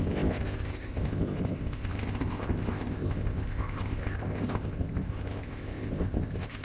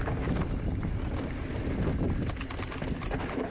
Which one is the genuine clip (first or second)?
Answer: second